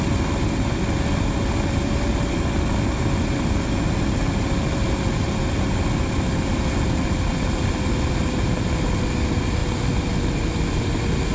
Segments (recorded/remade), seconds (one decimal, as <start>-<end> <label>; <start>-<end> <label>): 0.0-11.3 recorded